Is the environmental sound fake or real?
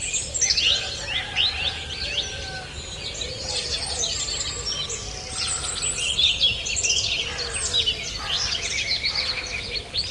real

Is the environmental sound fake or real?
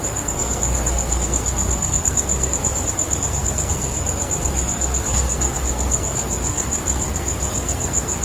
fake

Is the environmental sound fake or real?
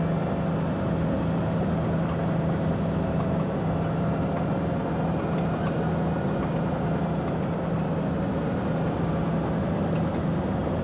real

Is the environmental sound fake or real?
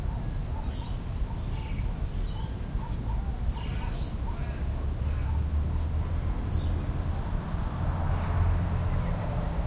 real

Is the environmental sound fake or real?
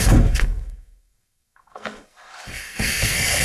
fake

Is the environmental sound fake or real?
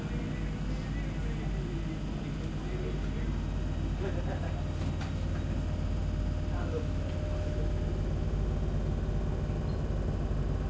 real